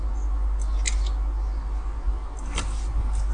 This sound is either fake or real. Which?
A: real